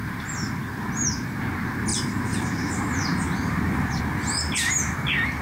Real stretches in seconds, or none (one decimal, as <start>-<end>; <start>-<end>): 0.0-1.9; 4.0-5.4